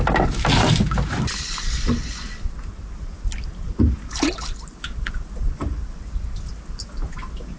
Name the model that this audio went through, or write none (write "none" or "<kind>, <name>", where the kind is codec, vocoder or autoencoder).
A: none